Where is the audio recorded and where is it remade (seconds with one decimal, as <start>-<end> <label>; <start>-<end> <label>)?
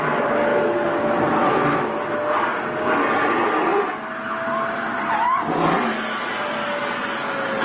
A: 0.0-0.5 recorded; 0.5-2.0 remade; 2.0-7.6 recorded